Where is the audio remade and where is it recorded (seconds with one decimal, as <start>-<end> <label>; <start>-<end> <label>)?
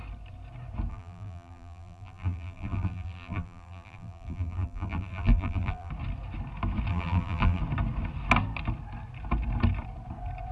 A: 0.0-0.9 recorded; 0.9-5.9 remade; 5.9-6.9 recorded; 6.9-7.6 remade; 7.6-10.5 recorded